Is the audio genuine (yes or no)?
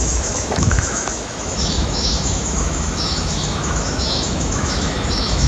no